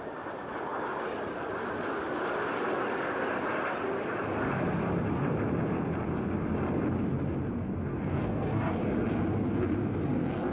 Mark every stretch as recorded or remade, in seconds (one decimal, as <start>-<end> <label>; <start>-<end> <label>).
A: 0.0-7.9 recorded; 7.9-8.7 remade; 8.7-10.5 recorded